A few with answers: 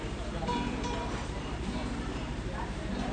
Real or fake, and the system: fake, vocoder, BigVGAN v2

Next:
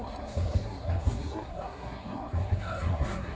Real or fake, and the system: fake, codec, SNAC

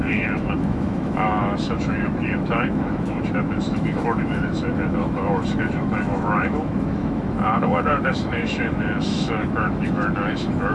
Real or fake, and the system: fake, autoencoder, DAC-VAE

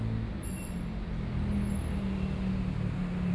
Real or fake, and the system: real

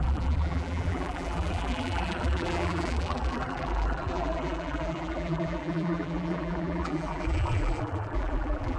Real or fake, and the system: fake, vocoder, BigVGAN v2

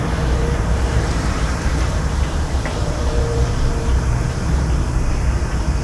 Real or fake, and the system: fake, vocoder, BigVGAN v2